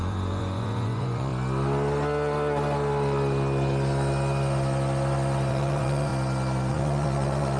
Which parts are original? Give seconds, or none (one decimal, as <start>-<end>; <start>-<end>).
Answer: 1.3-5.5; 6.1-6.7